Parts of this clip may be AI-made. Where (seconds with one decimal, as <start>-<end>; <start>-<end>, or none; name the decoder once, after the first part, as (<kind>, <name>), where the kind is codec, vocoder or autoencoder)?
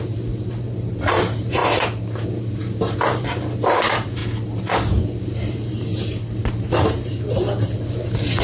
0.0-1.6 (vocoder, BigVGAN v2); 2.2-4.2; 5.0-5.9; 6.6-8.4